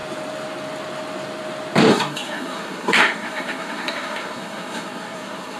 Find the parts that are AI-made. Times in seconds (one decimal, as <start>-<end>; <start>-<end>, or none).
1.9-5.6